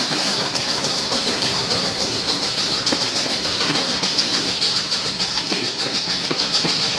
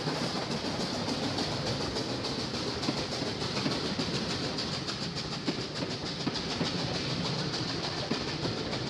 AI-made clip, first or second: first